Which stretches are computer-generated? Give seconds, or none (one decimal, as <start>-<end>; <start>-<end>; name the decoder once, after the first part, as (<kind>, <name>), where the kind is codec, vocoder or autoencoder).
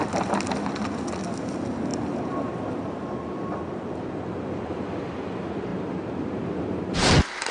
1.9-4.0 (vocoder, BigVGAN v2)